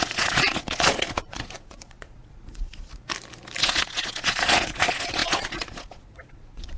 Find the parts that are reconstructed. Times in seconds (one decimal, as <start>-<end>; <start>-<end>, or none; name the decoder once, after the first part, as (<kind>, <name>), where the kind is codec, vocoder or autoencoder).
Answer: 0.0-2.9 (vocoder, Vocos); 3.6-6.8